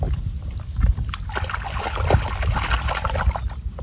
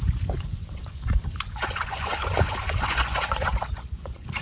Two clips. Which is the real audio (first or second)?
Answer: first